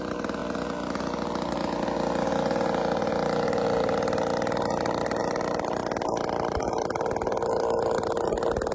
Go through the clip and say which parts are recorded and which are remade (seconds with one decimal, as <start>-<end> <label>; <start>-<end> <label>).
0.0-8.7 recorded